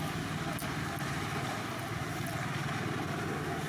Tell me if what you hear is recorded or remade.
recorded